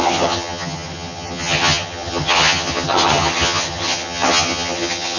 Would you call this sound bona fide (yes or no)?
no